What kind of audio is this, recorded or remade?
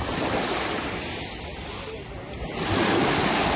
recorded